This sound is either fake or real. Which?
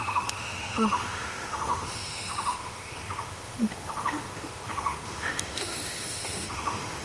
fake